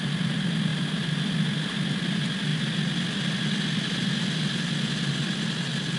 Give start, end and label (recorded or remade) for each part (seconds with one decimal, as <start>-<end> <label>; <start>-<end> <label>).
0.0-6.0 recorded